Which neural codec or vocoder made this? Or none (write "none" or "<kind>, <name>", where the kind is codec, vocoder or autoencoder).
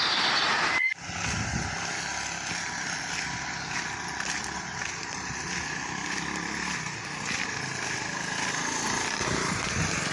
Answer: none